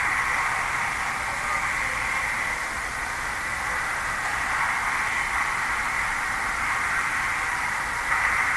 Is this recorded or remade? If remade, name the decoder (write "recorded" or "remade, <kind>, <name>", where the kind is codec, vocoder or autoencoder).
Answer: recorded